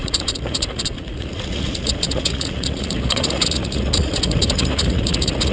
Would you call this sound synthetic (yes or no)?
yes